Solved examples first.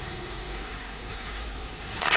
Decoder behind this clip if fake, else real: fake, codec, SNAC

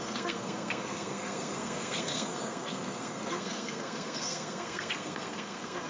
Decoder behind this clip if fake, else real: fake, codec, SNAC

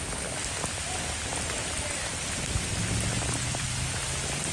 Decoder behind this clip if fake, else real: real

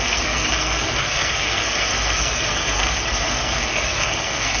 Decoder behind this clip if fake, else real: fake, codec, SNAC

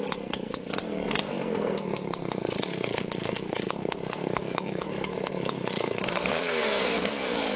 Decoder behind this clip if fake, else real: fake, codec, SNAC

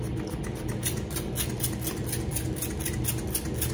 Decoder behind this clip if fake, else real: real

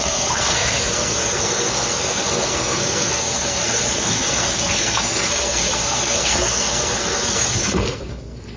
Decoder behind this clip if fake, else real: fake, codec, SNAC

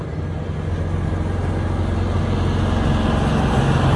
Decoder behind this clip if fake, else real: real